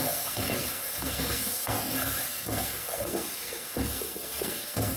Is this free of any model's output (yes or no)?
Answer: no